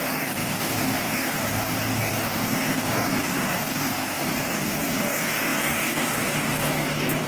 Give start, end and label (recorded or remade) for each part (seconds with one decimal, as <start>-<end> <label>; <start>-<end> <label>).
0.0-7.3 remade